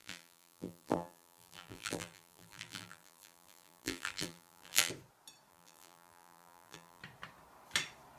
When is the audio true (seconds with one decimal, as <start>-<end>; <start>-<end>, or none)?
4.9-5.5; 7.0-8.2